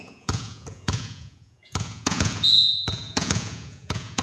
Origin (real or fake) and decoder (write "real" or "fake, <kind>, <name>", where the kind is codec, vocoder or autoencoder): fake, vocoder, Vocos